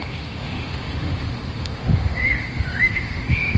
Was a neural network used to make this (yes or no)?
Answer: yes